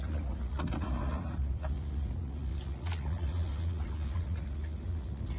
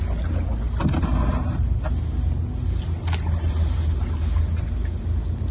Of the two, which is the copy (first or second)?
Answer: first